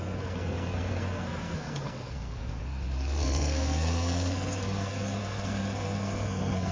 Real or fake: fake